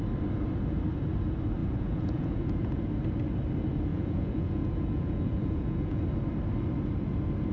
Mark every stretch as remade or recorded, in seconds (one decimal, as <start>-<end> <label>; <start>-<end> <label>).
0.0-1.6 recorded; 1.6-2.8 remade; 2.8-3.9 recorded; 3.9-6.0 remade; 6.0-7.5 recorded